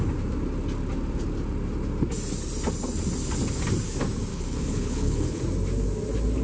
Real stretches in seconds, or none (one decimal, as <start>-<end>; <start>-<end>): 0.0-4.3; 5.4-6.4

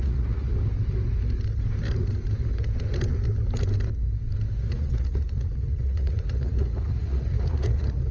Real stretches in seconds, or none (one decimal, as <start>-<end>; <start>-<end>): 0.5-4.7

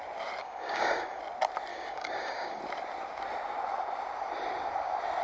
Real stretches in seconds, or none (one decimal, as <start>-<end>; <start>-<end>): 0.0-0.4; 1.2-1.7; 2.6-5.2

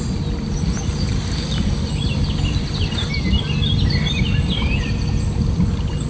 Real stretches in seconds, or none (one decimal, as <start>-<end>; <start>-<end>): 0.0-6.1

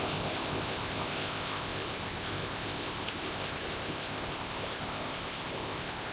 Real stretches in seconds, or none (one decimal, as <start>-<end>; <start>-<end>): none

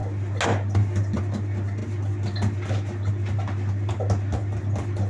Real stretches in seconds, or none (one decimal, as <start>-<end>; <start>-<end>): 0.0-5.1

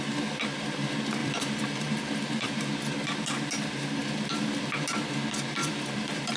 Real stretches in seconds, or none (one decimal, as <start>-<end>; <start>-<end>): 0.0-1.2; 2.6-5.6

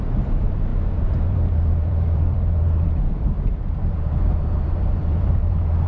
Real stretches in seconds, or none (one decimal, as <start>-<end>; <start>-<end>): none